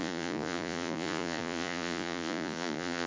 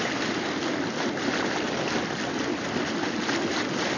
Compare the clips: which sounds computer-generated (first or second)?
first